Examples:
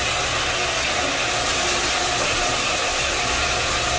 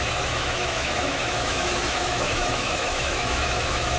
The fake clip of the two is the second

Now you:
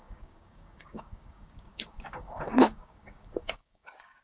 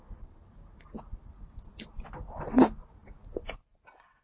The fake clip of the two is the first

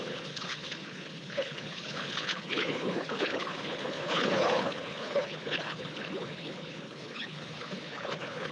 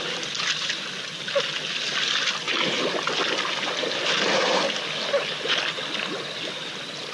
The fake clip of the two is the first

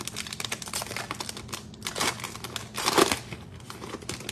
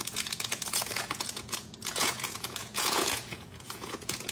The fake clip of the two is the second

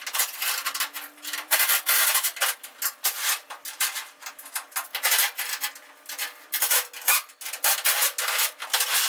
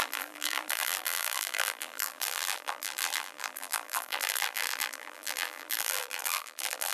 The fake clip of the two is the second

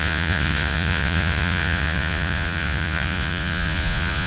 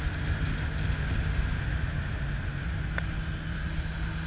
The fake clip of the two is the first